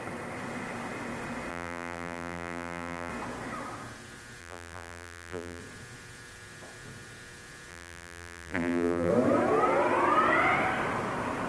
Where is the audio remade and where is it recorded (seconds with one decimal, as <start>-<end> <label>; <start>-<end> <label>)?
0.0-1.5 recorded; 1.5-3.1 remade; 3.1-4.4 recorded; 4.4-5.6 remade; 5.6-7.7 recorded; 7.7-9.1 remade; 9.1-11.5 recorded